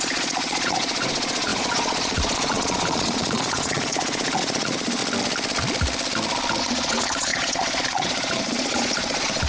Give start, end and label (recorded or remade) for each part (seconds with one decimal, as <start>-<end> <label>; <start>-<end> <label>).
0.0-5.0 remade; 5.0-6.6 recorded; 6.6-9.5 remade